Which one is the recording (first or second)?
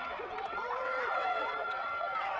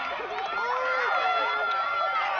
second